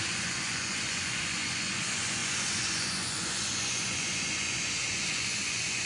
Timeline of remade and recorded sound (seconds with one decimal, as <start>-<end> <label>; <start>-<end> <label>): 0.0-5.9 remade